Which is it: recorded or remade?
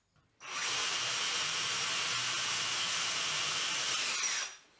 recorded